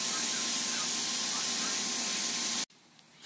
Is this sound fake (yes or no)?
no